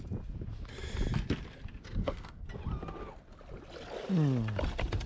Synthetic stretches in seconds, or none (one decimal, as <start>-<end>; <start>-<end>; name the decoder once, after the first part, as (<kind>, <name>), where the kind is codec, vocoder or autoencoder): 2.0-2.5 (codec, SNAC)